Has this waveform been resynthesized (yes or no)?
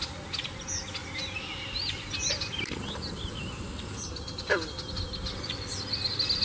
no